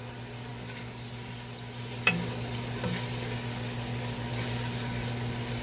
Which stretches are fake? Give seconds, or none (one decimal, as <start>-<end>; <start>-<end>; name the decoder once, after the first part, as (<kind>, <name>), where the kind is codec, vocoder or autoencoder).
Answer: none